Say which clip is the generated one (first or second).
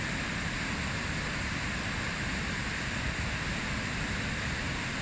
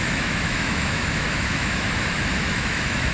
second